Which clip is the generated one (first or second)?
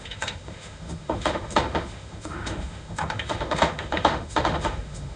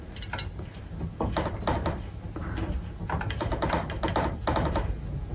first